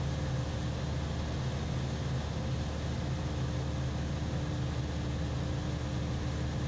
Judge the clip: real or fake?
real